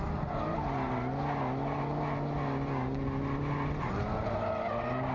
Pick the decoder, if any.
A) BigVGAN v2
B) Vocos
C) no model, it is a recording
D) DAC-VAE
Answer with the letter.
C